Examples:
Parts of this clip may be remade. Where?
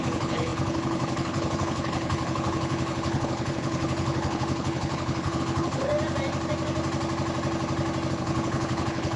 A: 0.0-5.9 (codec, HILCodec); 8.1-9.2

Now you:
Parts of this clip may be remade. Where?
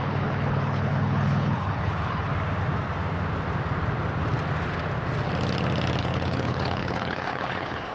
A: 0.0-2.3 (codec, HILCodec); 6.0-7.9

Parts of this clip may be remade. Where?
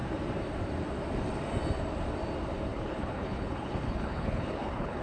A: 2.7-5.0 (codec, HILCodec)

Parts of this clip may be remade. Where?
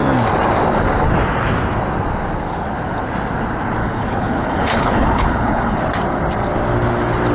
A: 3.8-5.8 (codec, HILCodec)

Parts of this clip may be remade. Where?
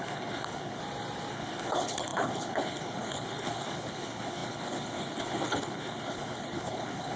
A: 0.0-0.8 (codec, HILCodec); 1.3-7.2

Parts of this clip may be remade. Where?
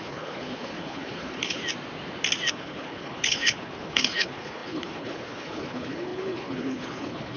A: 0.0-1.6 (codec, HILCodec); 2.5-7.4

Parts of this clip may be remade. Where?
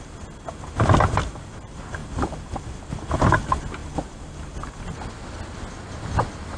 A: none